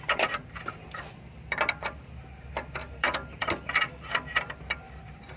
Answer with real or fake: fake